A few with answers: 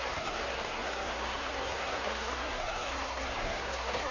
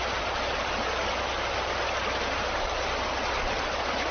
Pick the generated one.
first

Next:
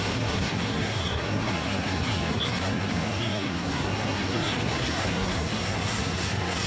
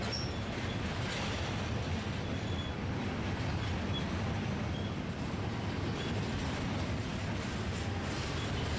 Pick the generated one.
first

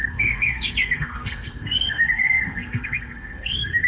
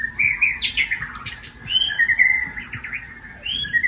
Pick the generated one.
first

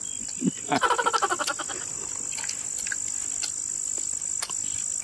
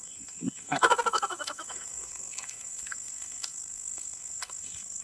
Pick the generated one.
second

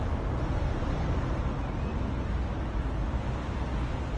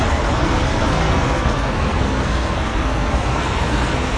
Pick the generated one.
second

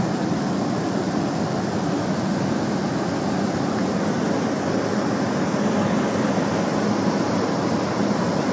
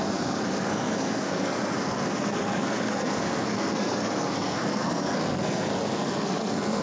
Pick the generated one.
second